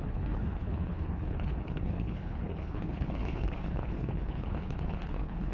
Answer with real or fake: fake